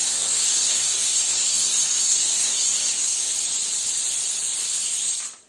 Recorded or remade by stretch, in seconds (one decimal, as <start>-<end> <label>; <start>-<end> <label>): 0.0-3.3 remade; 3.3-4.6 recorded; 4.6-5.1 remade; 5.1-5.5 recorded

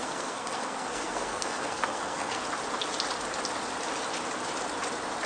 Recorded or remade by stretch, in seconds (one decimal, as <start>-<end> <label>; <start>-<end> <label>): 0.0-2.4 remade; 2.4-5.3 recorded

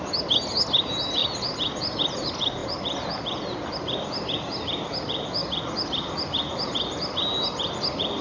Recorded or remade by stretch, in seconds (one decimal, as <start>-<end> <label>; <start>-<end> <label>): 0.0-8.2 recorded

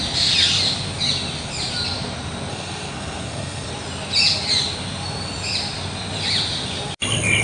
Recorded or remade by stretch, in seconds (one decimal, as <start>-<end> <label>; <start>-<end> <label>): 0.0-2.5 recorded; 2.5-3.7 remade; 3.7-7.4 recorded

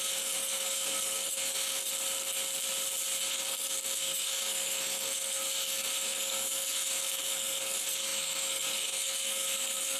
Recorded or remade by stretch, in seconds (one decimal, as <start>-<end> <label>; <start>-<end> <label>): 0.0-1.9 remade; 1.9-3.3 recorded; 3.3-10.0 remade

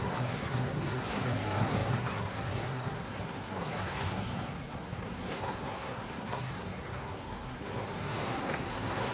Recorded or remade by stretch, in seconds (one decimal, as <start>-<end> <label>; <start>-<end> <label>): 0.0-9.1 remade

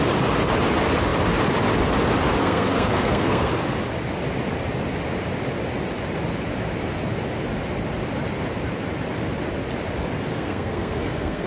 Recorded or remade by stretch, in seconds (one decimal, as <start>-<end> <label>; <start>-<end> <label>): 0.0-2.4 recorded; 2.4-3.5 remade; 3.5-10.3 recorded; 10.3-11.5 remade